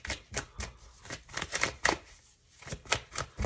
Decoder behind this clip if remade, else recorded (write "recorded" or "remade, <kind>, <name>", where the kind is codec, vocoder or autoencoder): recorded